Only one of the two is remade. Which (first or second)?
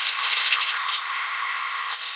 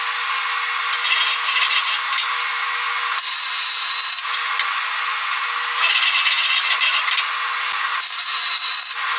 first